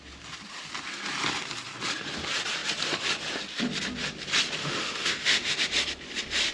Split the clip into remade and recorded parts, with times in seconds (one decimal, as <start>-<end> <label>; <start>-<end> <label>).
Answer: 0.0-4.6 recorded; 4.6-5.6 remade; 5.6-6.5 recorded